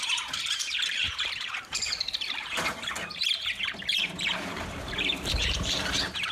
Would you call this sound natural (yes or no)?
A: no